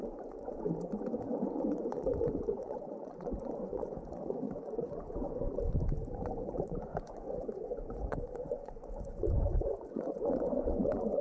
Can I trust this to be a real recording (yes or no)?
no